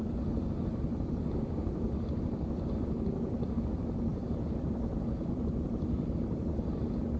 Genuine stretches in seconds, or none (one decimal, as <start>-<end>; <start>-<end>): 0.0-7.2